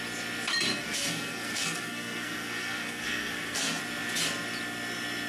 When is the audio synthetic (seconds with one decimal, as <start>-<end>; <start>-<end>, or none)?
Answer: 0.7-3.8